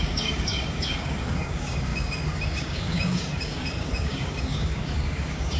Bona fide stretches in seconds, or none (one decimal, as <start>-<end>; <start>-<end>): none